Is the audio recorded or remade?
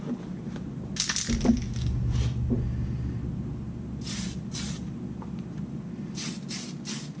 recorded